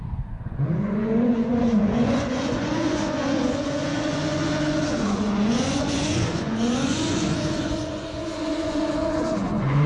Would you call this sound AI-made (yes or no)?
yes